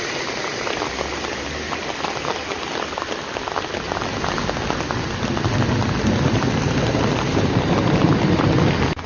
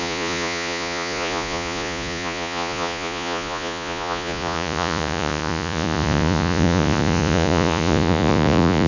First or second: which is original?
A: first